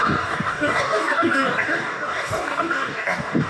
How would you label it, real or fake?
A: fake